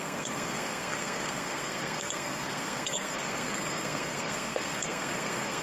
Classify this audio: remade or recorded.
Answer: remade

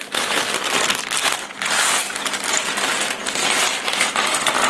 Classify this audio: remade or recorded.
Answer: recorded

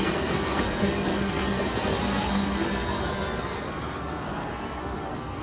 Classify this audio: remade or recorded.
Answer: remade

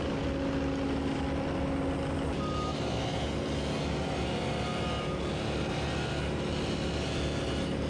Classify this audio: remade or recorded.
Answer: recorded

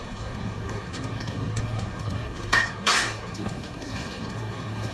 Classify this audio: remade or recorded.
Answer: remade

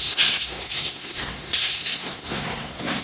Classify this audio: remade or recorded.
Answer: remade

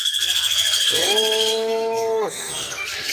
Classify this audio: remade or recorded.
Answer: remade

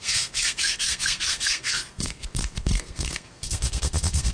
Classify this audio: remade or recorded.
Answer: remade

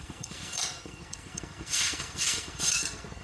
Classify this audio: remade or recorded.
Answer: remade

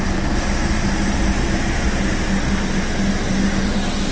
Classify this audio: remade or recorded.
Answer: recorded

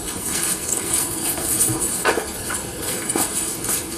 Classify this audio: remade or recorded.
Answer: remade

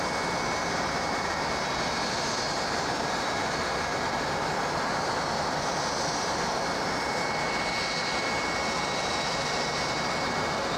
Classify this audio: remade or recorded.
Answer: recorded